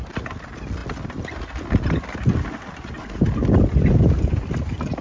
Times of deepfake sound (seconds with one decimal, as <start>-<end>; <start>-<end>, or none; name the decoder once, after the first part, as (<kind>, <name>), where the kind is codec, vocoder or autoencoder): none